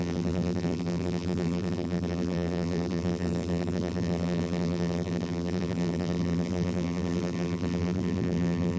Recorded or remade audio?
remade